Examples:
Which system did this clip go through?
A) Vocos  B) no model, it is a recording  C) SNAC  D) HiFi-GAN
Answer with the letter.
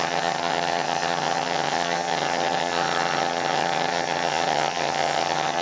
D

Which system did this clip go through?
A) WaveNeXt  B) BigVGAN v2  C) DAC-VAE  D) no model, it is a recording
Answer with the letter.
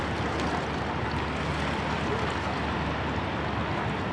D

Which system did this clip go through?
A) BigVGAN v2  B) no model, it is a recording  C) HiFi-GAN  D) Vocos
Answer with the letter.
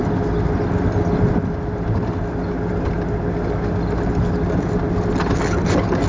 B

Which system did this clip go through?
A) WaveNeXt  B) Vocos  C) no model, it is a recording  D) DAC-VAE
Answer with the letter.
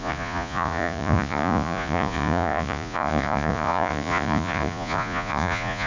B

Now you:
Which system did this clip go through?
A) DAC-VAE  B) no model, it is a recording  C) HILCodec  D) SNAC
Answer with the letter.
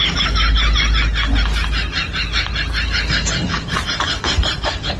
B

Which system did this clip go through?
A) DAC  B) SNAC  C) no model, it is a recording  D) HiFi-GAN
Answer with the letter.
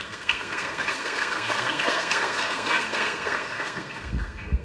B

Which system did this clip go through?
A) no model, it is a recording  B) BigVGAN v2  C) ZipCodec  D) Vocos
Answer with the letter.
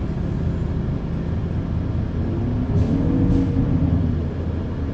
A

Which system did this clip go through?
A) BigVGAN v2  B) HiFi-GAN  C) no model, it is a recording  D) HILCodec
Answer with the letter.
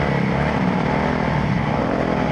C